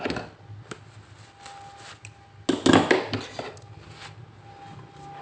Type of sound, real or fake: real